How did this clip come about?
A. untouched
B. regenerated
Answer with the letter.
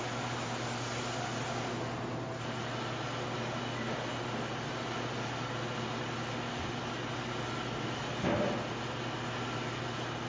A